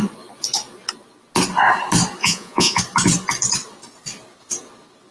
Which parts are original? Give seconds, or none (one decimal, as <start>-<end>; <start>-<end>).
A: 0.0-2.2; 2.8-5.1